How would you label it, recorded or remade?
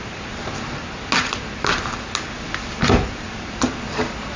recorded